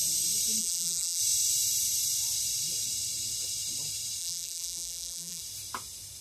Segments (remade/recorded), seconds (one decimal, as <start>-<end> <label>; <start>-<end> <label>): 0.0-0.6 recorded; 0.6-1.2 remade; 1.2-4.2 recorded; 4.2-5.4 remade; 5.4-6.2 recorded